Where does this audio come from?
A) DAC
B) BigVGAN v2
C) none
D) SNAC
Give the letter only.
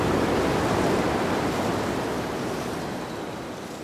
C